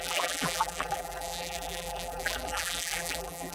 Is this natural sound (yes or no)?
no